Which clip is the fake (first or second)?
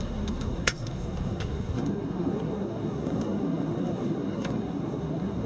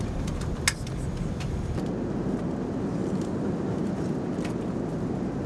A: first